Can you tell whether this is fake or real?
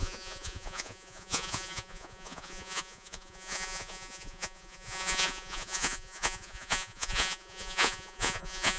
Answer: fake